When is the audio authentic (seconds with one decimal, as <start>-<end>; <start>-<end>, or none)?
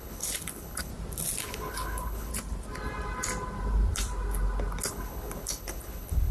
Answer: 0.9-1.4; 2.3-4.9